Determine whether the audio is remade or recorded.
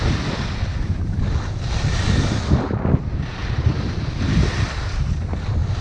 remade